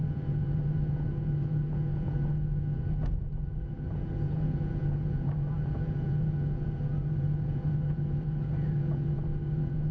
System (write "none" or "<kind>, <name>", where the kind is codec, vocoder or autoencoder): vocoder, Vocos